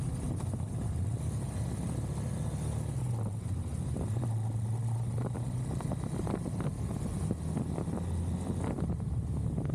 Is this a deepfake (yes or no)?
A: no